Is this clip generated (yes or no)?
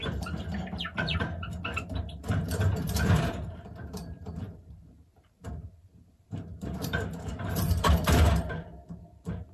yes